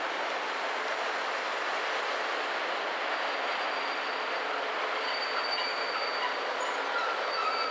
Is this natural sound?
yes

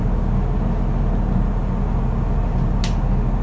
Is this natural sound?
yes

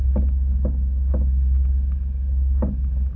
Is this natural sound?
yes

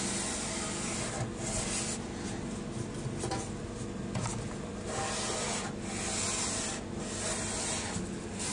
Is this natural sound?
yes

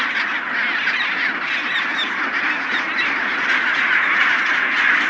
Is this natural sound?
yes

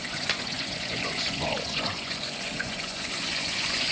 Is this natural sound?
no